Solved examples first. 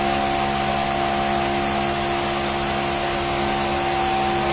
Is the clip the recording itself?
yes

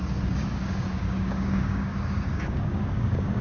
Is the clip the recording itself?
no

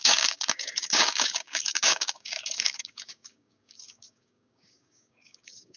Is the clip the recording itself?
no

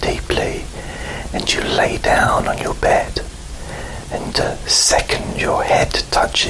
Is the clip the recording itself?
yes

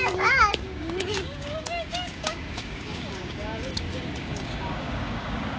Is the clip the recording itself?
no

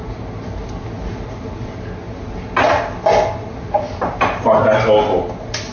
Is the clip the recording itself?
yes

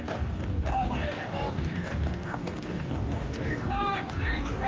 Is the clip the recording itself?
no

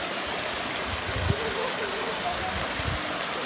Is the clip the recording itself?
yes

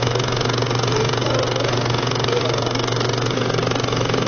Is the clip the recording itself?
no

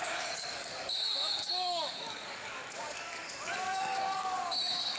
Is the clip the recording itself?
no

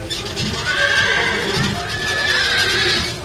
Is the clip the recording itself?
yes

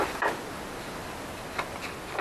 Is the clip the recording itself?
yes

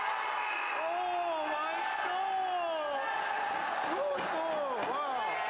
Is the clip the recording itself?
yes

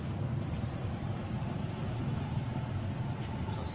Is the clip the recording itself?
yes